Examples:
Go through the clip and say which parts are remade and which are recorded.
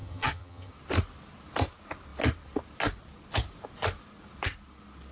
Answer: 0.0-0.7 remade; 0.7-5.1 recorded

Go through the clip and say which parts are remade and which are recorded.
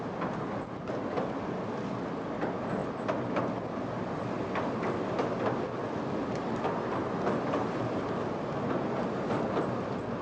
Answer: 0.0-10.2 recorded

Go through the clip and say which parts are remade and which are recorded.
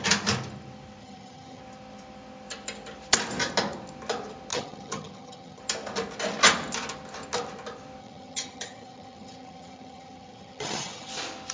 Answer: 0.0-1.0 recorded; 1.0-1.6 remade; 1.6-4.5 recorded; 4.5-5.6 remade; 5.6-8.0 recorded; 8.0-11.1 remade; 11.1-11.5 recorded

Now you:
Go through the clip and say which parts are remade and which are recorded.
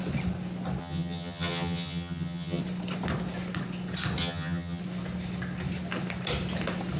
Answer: 0.0-0.8 recorded; 0.8-2.6 remade; 2.6-4.2 recorded; 4.2-4.8 remade; 4.8-7.0 recorded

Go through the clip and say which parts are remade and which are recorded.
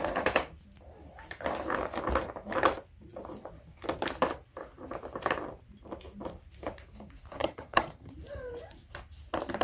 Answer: 0.0-7.4 recorded; 7.4-8.1 remade; 8.1-9.6 recorded